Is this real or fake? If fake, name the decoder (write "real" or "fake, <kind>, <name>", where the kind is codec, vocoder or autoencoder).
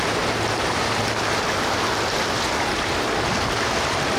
real